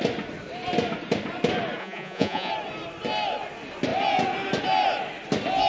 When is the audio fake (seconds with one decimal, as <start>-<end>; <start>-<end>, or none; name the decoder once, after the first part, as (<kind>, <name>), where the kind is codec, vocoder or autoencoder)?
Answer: 1.8-2.5 (vocoder, Vocos)

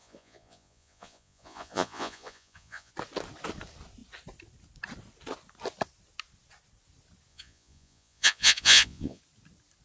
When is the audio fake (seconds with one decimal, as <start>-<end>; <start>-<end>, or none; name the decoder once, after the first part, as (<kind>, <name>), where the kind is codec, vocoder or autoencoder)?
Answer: 0.0-2.9 (vocoder, Vocos); 7.3-9.2